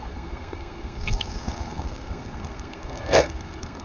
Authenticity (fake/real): fake